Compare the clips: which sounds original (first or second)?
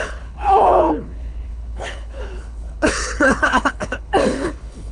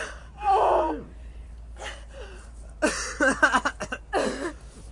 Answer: second